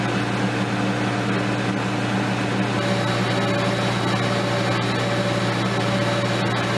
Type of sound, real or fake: real